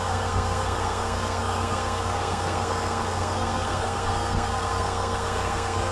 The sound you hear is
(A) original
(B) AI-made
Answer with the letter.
B